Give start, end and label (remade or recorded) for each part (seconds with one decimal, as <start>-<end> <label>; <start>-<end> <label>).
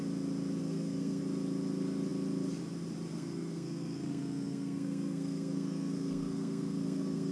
0.0-0.6 recorded; 0.6-1.2 remade; 1.2-3.1 recorded; 3.1-7.3 remade